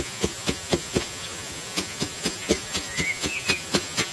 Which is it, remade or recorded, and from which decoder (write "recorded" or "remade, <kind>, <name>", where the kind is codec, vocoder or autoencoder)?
remade, vocoder, Vocos